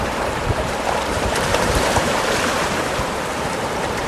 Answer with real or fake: fake